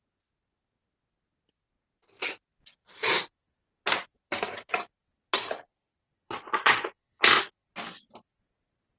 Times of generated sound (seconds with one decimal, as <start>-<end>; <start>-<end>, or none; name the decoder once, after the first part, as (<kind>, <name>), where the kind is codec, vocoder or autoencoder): 5.9-7.2 (vocoder, Vocos)